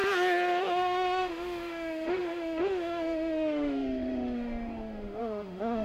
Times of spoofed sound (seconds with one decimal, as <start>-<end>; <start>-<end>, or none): 0.6-5.8